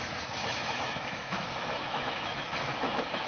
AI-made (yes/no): yes